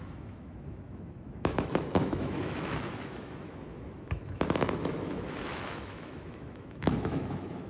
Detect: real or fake fake